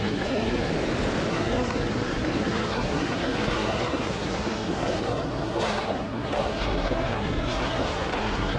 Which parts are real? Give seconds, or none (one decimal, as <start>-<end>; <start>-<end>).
0.7-1.3